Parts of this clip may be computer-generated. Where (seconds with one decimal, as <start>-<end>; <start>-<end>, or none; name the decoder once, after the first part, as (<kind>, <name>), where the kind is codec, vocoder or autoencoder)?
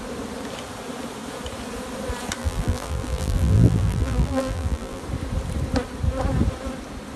2.4-5.0 (vocoder, BigVGAN v2)